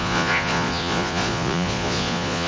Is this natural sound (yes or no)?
no